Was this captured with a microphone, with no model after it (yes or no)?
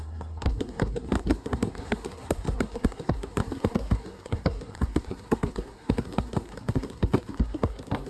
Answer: no